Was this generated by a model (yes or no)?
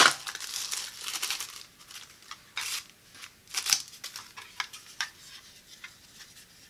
no